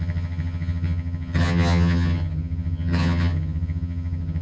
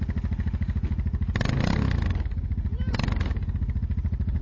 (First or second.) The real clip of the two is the second